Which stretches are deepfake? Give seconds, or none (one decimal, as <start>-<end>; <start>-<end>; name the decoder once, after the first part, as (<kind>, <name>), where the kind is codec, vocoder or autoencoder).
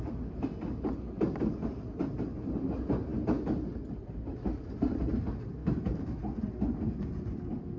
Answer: 5.6-6.2 (autoencoder, DAC-VAE)